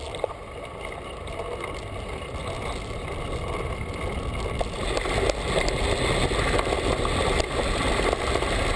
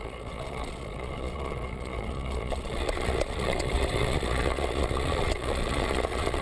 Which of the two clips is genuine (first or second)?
first